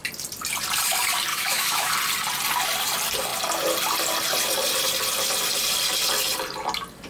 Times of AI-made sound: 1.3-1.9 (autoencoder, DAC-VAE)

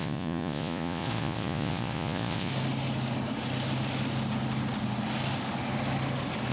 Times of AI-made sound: 0.0-2.5 (vocoder, Vocos)

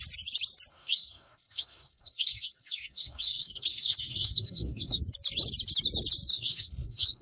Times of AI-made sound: 0.7-5.0 (codec, DAC); 6.3-7.2

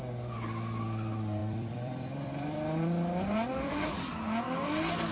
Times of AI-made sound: 1.4-3.7 (vocoder, BigVGAN v2)

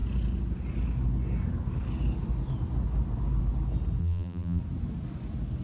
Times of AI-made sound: 4.0-4.6 (vocoder, BigVGAN v2)

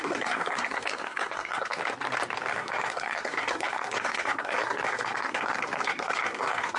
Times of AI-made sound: 0.0-1.8 (codec, SNAC); 2.5-6.8

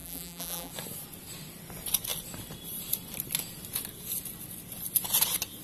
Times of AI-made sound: 0.0-0.7 (vocoder, BigVGAN v2)

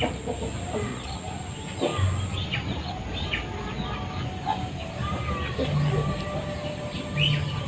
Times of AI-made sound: 0.9-1.5 (vocoder, Vocos)